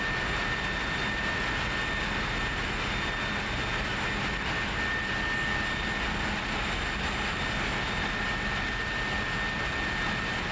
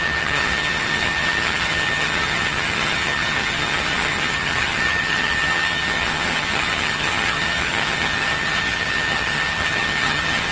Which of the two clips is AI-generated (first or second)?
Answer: second